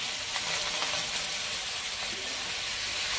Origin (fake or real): real